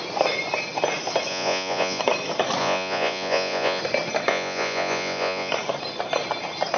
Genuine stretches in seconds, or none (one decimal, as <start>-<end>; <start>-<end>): 0.0-1.3; 2.0-2.6; 3.8-4.3; 5.5-6.8